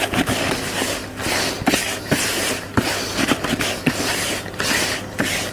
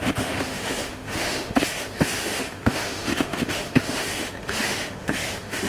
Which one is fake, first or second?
second